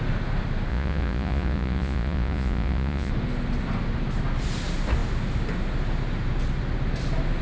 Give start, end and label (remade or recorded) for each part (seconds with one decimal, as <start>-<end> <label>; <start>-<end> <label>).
0.0-0.7 recorded; 0.7-3.1 remade; 3.1-7.4 recorded